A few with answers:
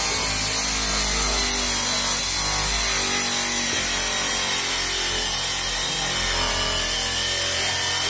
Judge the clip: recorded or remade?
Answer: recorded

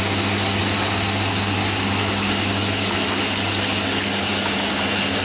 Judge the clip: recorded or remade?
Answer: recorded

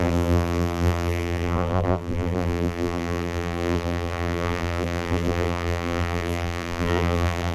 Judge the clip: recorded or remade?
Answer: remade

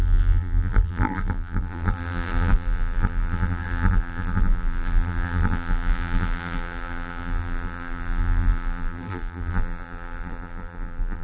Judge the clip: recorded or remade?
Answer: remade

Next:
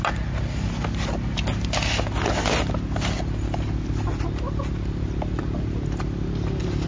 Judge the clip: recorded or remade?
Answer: recorded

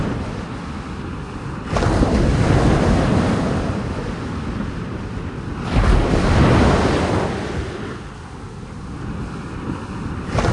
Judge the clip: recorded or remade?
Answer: recorded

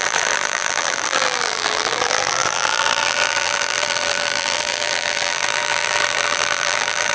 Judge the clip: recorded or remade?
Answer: remade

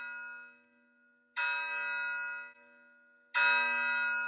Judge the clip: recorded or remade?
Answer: recorded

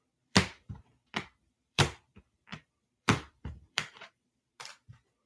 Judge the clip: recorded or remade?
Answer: remade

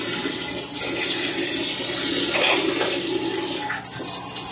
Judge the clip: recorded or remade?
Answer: recorded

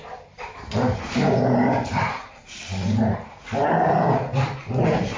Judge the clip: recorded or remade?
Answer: remade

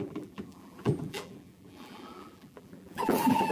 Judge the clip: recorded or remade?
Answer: remade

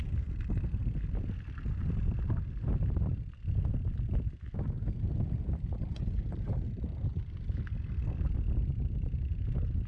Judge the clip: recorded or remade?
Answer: recorded